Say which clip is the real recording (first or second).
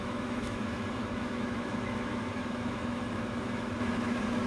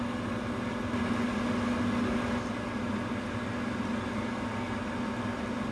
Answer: second